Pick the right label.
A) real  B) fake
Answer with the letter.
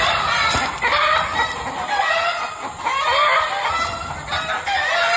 B